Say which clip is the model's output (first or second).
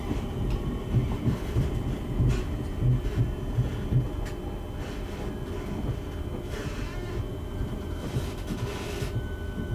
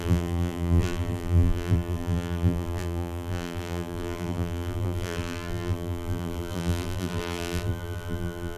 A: second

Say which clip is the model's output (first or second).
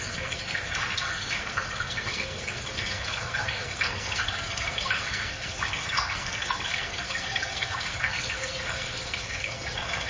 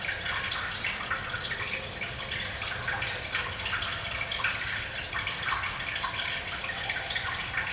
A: first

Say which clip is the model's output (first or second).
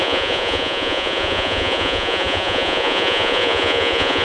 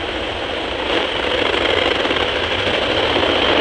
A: first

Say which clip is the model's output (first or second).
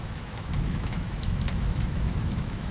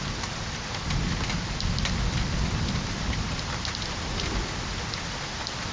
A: first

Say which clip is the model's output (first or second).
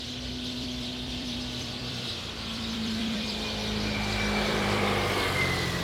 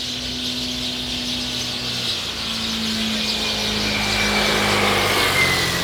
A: first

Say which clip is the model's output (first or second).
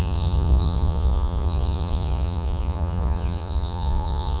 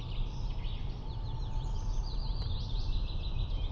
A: first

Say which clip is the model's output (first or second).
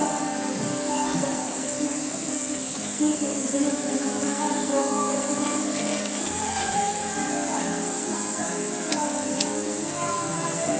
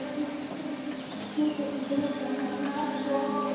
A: first